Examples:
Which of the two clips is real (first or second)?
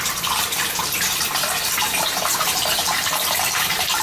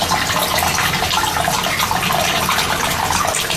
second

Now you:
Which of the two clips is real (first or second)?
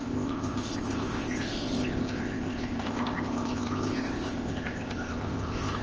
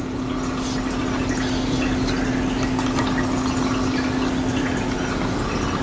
second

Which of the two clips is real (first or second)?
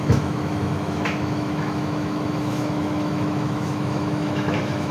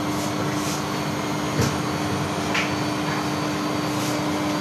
second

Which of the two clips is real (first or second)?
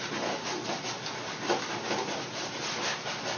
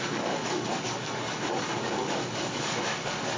first